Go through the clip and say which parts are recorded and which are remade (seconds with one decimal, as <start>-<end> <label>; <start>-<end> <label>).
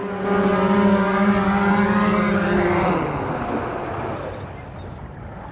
0.0-5.5 recorded